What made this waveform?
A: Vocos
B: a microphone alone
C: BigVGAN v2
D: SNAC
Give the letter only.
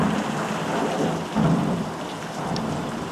B